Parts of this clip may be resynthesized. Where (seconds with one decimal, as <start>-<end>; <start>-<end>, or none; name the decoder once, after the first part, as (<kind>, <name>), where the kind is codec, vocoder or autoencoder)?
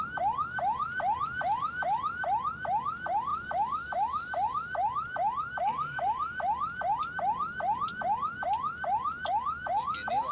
none